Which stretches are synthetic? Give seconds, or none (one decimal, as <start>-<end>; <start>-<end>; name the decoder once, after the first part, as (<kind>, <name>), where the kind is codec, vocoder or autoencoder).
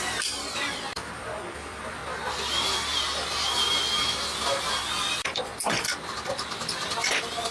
0.0-2.0 (vocoder, BigVGAN v2); 4.6-5.5